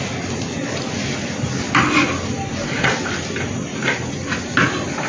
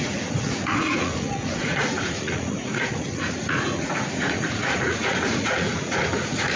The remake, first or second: second